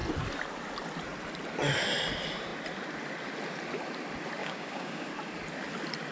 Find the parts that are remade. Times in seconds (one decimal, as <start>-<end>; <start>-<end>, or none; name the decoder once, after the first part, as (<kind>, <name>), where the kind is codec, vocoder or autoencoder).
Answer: 4.4-5.1 (codec, DAC)